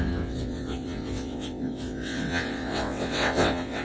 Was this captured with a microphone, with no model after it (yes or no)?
no